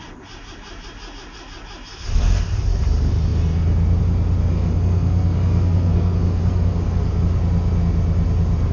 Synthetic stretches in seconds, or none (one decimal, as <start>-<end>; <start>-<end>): 4.4-7.2